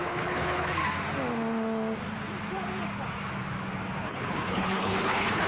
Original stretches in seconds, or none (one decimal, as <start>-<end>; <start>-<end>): 0.7-4.0